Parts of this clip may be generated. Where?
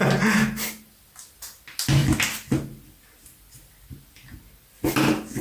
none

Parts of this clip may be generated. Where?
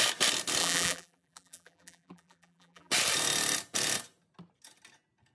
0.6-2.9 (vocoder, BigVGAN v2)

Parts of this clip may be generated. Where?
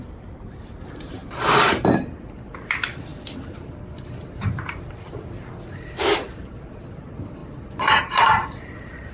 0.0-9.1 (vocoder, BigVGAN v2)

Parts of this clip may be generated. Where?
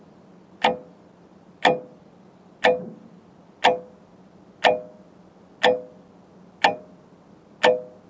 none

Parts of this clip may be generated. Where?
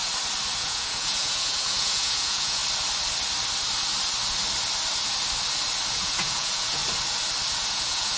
0.6-2.6 (vocoder, Vocos); 5.9-6.8; 7.7-8.2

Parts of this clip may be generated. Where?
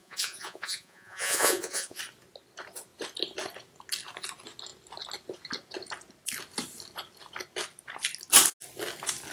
0.0-2.0 (vocoder, Vocos)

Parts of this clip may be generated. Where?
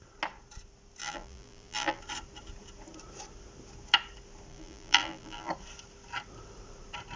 1.0-2.0 (vocoder, BigVGAN v2); 4.5-5.5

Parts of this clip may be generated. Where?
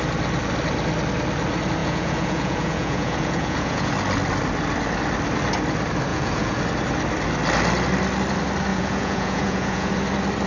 1.8-3.9 (vocoder, Vocos); 6.1-6.6; 8.7-9.9